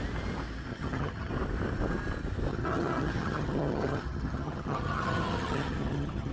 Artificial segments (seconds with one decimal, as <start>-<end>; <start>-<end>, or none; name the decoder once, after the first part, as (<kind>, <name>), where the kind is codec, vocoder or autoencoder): 0.7-1.3 (vocoder, HiFi-GAN); 2.5-6.3